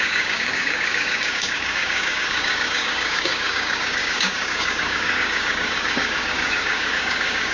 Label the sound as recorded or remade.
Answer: remade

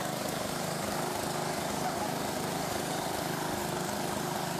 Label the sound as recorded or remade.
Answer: remade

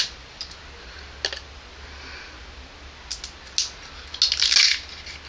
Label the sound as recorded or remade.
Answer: recorded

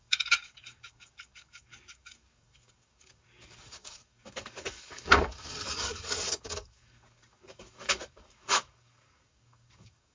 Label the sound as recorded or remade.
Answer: remade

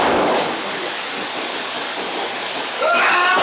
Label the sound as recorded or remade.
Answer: remade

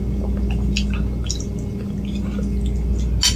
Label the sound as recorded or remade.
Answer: recorded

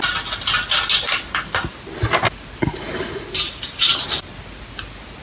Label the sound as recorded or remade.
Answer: recorded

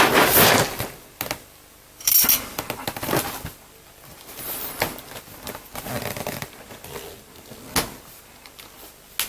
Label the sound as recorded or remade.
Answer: recorded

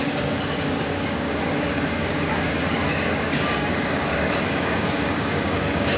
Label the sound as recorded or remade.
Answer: remade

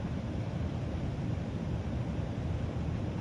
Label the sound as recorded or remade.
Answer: recorded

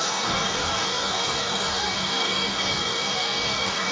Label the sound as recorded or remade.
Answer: remade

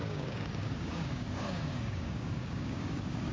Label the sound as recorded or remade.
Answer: remade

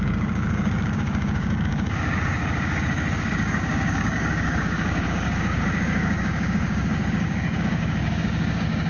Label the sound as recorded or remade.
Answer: remade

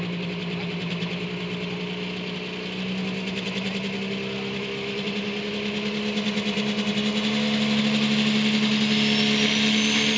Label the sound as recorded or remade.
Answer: recorded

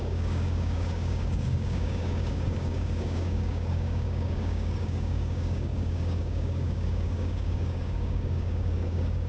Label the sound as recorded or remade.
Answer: remade